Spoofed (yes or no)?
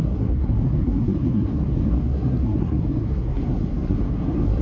yes